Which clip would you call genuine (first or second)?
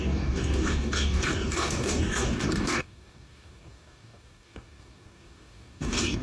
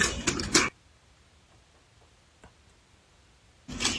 second